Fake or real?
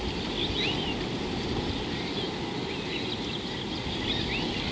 real